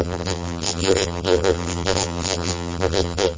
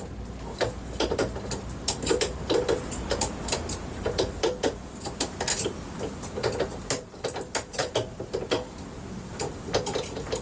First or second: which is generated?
first